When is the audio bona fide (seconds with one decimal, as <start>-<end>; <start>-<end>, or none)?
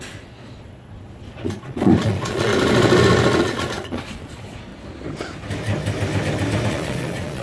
2.5-3.4; 4.7-6.7